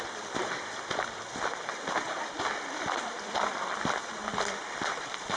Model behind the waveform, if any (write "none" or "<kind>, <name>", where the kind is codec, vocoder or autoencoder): vocoder, BigVGAN v2